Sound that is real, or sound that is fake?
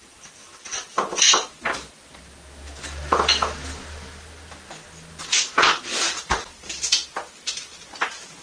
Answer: real